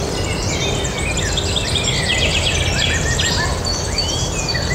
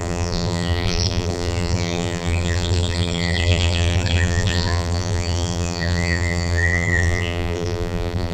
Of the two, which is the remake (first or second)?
second